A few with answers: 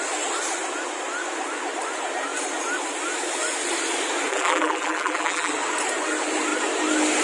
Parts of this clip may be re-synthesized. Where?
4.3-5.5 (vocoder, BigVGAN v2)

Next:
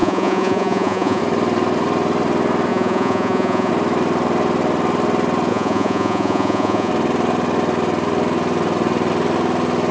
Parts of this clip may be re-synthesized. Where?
0.0-1.2 (vocoder, Vocos); 2.7-3.7; 5.5-6.9

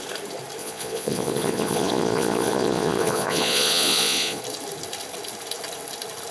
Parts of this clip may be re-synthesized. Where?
0.6-4.4 (vocoder, Vocos)

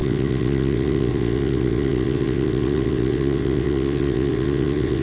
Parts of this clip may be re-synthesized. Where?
0.0-5.0 (vocoder, WaveNeXt)